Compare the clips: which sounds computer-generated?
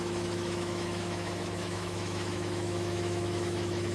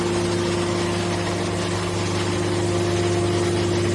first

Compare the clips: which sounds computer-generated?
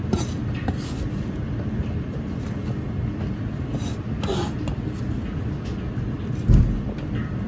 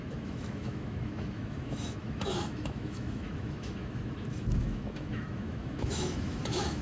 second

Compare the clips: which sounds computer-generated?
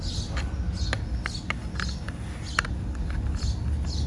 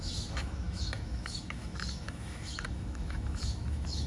second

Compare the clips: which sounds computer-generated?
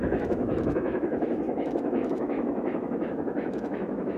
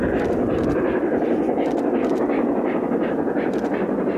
first